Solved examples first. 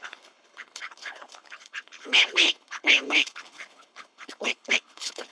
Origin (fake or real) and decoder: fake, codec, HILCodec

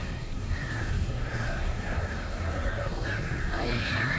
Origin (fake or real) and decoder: fake, codec, SNAC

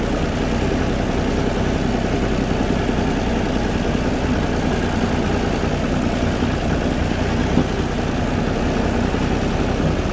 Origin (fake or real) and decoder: real